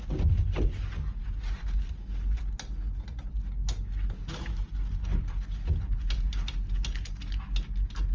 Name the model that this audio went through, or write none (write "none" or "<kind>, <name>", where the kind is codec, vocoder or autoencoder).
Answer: none